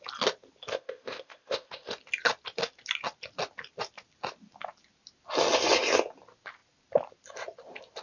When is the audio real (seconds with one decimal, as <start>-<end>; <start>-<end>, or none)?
0.0-0.7; 1.9-8.0

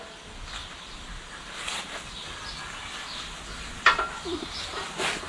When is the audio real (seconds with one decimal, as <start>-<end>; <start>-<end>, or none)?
0.6-2.8

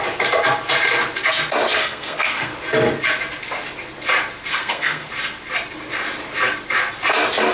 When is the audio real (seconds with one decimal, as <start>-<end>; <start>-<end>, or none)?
0.0-1.8; 2.5-4.5; 5.1-7.5